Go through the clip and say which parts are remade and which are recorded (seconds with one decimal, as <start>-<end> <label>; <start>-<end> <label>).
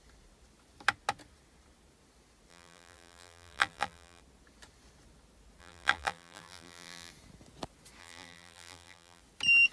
0.0-2.5 recorded; 2.5-4.2 remade; 4.2-5.6 recorded; 5.6-7.1 remade; 7.1-8.0 recorded; 8.0-9.2 remade; 9.2-9.7 recorded